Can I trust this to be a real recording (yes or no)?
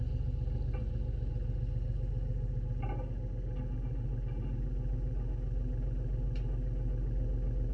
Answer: yes